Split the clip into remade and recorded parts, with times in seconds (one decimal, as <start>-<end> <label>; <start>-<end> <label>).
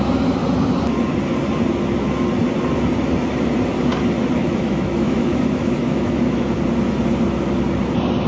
0.0-4.4 recorded; 4.4-6.6 remade; 6.6-8.3 recorded